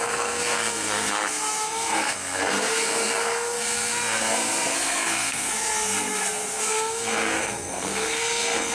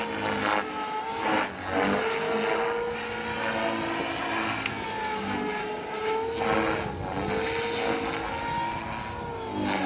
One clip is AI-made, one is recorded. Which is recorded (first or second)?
second